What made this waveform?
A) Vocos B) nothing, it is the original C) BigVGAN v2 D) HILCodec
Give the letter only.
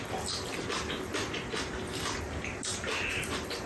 B